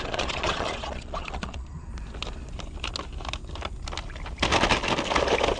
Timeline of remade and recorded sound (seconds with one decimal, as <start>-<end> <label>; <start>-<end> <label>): 0.0-1.9 remade; 1.9-5.6 recorded